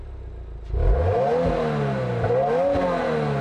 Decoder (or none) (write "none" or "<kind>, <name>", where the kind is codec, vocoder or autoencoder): none